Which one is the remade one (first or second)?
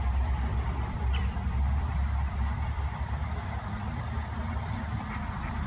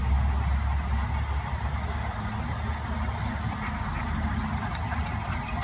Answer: first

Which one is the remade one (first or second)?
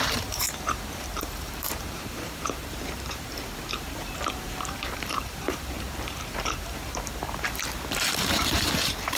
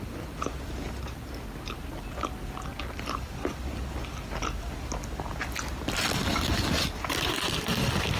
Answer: first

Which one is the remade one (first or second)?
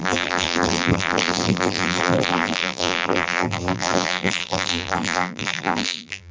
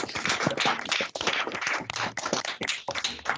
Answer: first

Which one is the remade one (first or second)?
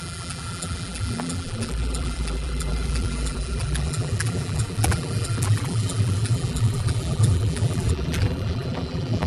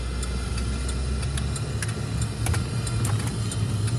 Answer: first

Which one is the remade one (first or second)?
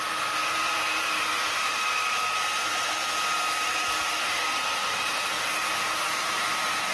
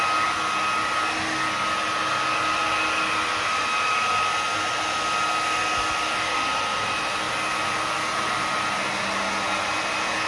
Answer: first